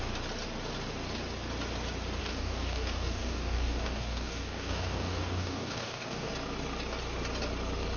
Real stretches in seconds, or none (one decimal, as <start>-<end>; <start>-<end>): 0.0-2.2; 6.3-8.0